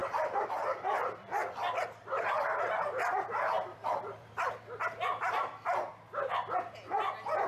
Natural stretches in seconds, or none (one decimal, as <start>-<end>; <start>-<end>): 4.5-7.5